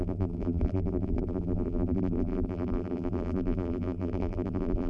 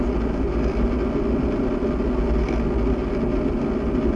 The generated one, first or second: first